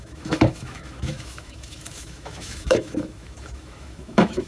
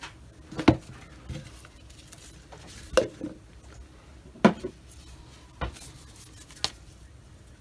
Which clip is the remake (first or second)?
first